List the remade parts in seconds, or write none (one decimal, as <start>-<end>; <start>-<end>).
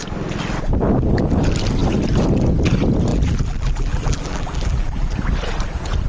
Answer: 3.1-5.1